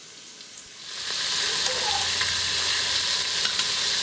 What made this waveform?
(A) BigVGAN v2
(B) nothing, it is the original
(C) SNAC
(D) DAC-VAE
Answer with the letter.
B